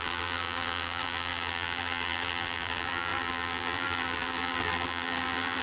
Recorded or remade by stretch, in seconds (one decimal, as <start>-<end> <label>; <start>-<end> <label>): 0.0-5.6 remade